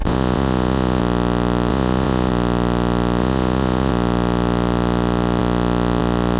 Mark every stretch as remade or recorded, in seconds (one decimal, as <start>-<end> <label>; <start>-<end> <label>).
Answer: 0.0-1.0 remade; 1.0-1.7 recorded; 1.7-2.3 remade; 2.3-3.2 recorded; 3.2-3.9 remade; 3.9-6.4 recorded